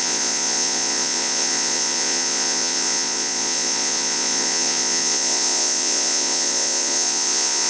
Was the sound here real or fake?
fake